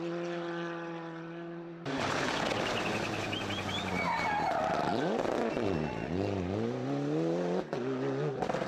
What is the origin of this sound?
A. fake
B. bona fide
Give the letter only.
B